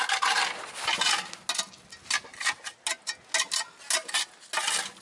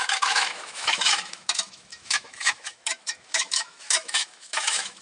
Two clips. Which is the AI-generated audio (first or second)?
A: second